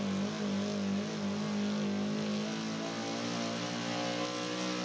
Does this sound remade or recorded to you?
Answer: recorded